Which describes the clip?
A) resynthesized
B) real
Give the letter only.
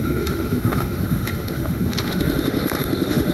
A